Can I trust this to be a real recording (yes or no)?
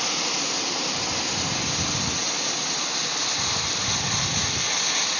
yes